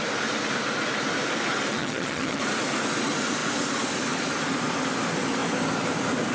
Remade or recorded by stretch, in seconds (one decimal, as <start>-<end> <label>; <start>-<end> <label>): 0.0-1.7 recorded; 1.7-2.4 remade; 2.4-6.3 recorded